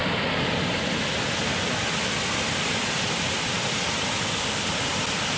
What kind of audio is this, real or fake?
real